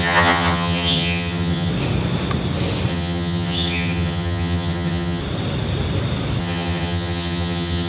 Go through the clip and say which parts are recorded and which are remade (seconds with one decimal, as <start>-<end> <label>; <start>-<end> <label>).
0.0-1.7 remade; 1.7-2.9 recorded; 2.9-5.2 remade; 5.2-6.4 recorded; 6.4-7.9 remade